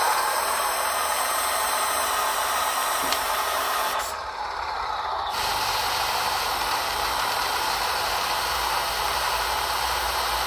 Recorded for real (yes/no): no